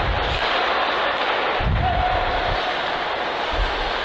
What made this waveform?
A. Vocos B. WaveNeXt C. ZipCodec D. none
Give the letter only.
D